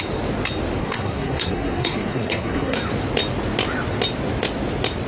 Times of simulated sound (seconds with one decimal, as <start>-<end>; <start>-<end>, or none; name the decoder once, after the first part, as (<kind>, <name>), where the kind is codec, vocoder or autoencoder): 0.8-2.8 (codec, SNAC)